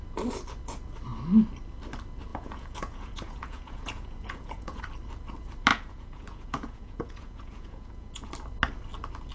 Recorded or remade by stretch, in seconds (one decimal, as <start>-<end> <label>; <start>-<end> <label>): 0.0-2.3 recorded; 2.3-4.8 remade; 4.8-5.7 recorded; 5.7-8.3 remade; 8.3-9.3 recorded